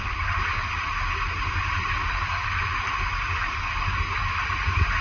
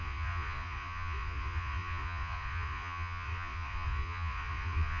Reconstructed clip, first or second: second